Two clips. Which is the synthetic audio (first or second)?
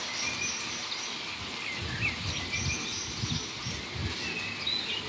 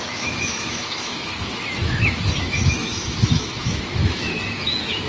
second